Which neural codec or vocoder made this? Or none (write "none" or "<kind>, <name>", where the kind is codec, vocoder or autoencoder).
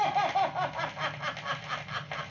none